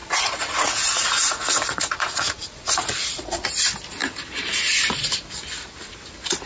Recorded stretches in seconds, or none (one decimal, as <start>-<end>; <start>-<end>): 3.4-6.5

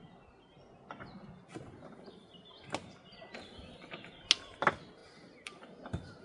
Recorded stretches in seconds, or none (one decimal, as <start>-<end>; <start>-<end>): 0.0-6.2

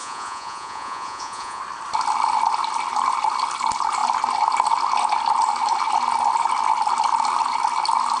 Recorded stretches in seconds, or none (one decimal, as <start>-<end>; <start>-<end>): 1.6-8.2

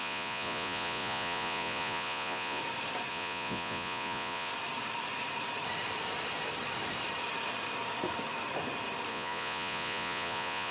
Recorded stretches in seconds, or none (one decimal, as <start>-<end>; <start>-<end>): 2.6-3.1; 4.5-9.1

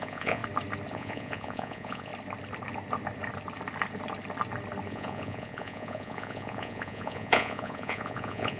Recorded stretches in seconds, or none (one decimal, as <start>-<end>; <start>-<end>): 0.4-0.9; 2.1-4.9

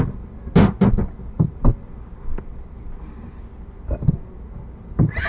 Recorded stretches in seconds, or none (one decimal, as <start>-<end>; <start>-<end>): 0.0-5.3

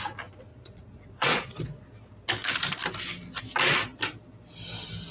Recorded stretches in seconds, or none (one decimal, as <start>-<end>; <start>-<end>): 0.0-0.5; 1.8-5.1